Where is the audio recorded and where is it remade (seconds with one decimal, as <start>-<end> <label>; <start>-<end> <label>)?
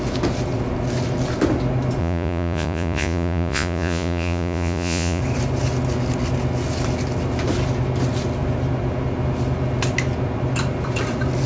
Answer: 0.0-2.0 recorded; 2.0-5.2 remade; 5.2-11.5 recorded